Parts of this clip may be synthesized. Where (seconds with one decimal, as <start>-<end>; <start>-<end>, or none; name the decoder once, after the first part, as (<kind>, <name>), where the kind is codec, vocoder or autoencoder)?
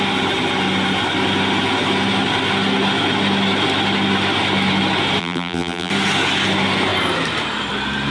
5.2-5.9 (vocoder, BigVGAN v2)